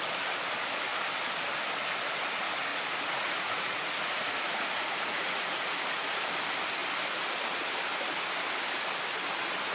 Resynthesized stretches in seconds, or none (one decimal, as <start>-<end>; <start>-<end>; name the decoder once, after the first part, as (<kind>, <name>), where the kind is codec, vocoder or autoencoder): 2.7-6.2 (vocoder, Vocos)